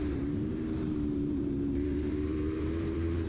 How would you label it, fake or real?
fake